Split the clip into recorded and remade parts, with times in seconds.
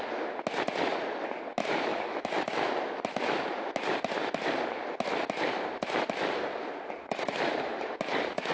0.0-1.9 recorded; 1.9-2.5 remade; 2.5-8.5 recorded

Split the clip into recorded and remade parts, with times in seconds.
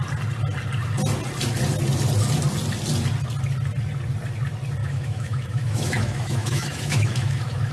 0.0-4.8 recorded; 4.8-7.7 remade